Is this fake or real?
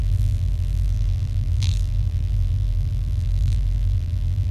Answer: fake